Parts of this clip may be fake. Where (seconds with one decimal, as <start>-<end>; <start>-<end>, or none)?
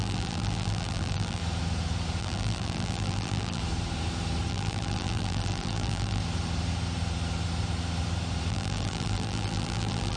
0.0-1.4; 2.2-3.6; 4.5-6.2; 8.5-10.2